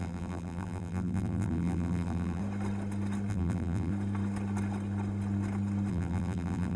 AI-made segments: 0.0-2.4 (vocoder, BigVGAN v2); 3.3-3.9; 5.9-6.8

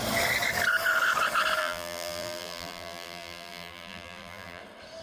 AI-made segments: 1.6-4.6 (vocoder, BigVGAN v2)

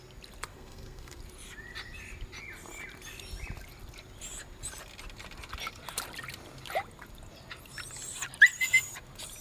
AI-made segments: 0.5-1.2 (codec, SNAC)